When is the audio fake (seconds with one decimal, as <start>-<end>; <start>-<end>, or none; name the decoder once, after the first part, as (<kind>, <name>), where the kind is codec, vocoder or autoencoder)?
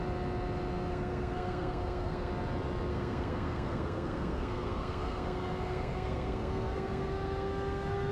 0.9-2.3 (codec, SNAC); 2.9-8.1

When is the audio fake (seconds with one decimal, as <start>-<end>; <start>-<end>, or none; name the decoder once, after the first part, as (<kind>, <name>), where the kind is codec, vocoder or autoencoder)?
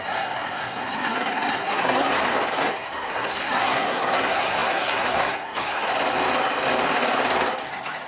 0.0-2.1 (codec, SNAC); 2.6-5.9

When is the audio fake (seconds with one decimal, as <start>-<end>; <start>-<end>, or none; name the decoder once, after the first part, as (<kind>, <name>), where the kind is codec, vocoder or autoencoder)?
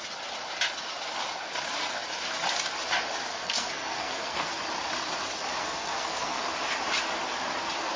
3.3-4.5 (codec, SNAC); 5.6-6.4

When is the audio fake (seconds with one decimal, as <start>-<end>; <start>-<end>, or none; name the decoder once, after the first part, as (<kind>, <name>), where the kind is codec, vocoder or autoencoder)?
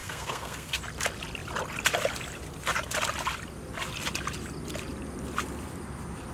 0.0-0.8 (codec, SNAC)